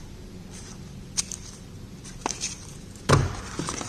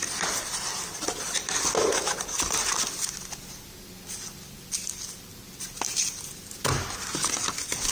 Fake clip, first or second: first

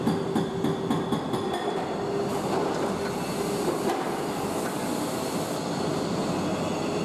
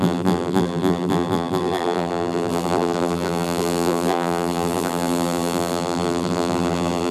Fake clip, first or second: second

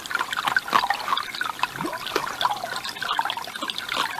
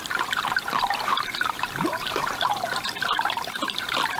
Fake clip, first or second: second